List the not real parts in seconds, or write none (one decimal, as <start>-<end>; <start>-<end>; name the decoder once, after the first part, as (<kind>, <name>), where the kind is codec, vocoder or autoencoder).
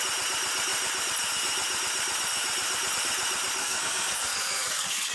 3.6-5.1 (codec, SNAC)